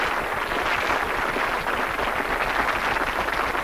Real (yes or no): yes